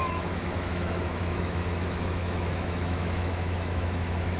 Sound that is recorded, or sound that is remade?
remade